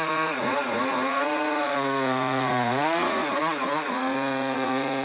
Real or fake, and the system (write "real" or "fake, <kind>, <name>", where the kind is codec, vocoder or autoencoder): fake, vocoder, Vocos